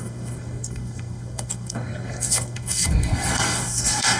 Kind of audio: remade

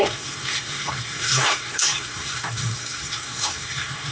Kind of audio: remade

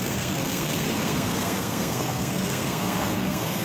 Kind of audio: remade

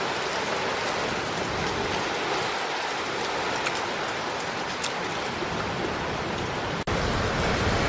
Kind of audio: recorded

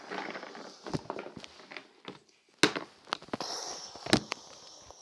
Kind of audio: recorded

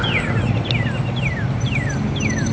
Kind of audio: recorded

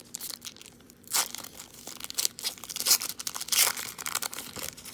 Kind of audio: recorded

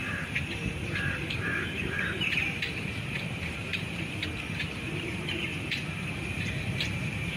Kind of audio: remade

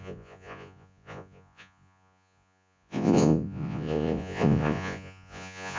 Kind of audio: remade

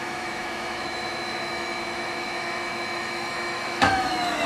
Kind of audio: remade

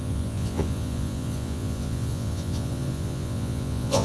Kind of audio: remade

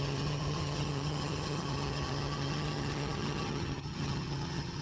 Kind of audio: remade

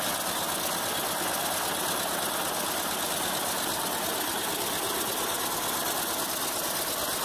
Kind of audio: recorded